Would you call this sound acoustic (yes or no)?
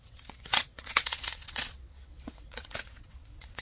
no